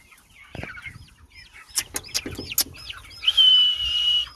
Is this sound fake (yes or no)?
no